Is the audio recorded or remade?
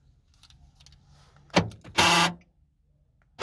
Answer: recorded